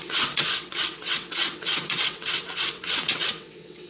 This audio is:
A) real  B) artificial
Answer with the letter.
B